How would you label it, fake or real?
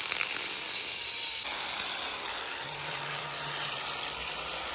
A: fake